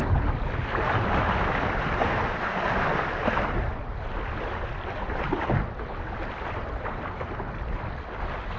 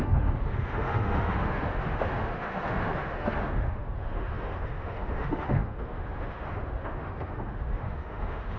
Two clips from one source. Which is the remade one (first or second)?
second